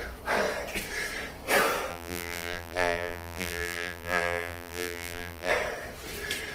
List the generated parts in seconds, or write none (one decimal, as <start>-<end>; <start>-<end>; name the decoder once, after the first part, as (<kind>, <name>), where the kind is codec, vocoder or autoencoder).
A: 1.9-5.5 (vocoder, BigVGAN v2)